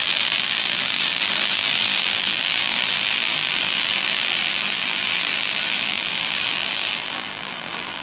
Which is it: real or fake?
fake